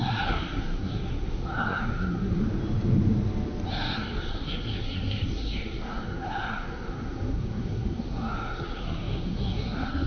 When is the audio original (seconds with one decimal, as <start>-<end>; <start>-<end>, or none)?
2.4-3.7